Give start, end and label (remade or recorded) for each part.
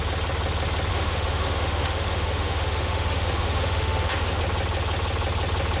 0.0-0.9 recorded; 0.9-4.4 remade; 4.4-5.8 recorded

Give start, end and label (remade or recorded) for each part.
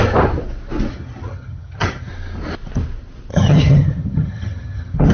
0.0-0.9 recorded; 0.9-2.1 remade; 2.1-3.3 recorded; 3.3-5.1 remade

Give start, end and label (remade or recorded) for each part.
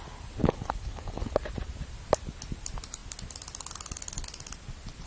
0.0-0.4 recorded; 0.4-1.4 remade; 1.4-5.1 recorded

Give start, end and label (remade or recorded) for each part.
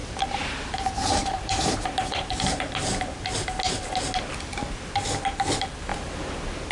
0.0-2.7 remade; 2.7-5.9 recorded; 5.9-6.7 remade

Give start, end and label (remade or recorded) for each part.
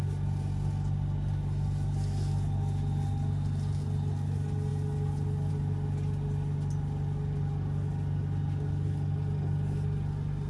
0.0-10.5 recorded